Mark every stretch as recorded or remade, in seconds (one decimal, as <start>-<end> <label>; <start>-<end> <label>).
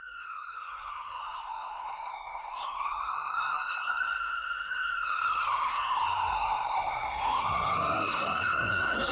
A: 0.0-9.1 remade